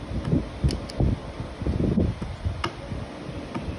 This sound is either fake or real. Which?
real